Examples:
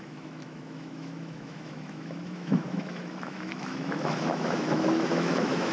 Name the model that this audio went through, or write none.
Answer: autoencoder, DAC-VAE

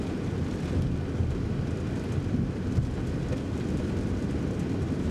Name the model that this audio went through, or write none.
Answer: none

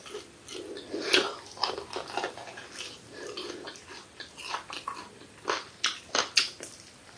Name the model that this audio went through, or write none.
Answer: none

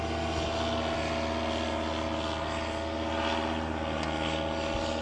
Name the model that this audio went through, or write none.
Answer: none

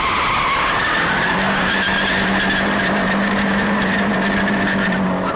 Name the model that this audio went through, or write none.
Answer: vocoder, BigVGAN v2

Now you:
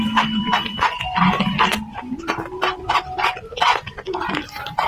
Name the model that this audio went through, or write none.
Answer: none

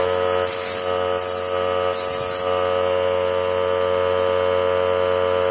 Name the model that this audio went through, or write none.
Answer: none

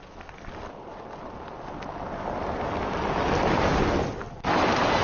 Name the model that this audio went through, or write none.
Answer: none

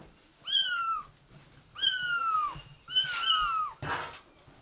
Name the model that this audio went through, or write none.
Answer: none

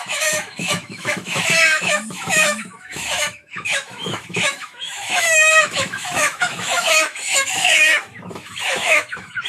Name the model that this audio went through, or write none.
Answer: autoencoder, DAC-VAE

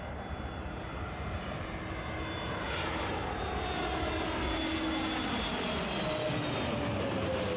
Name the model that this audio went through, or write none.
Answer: none